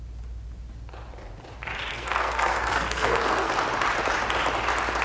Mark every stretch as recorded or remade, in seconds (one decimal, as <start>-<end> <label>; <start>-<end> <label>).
0.0-1.9 recorded; 1.9-3.5 remade; 3.5-5.0 recorded